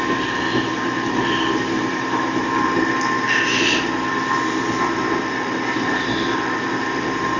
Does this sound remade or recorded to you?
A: recorded